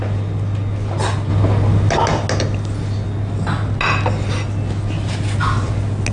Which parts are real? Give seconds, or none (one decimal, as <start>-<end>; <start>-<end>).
0.0-6.1

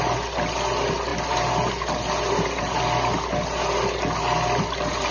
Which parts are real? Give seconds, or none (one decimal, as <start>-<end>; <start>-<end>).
0.0-5.1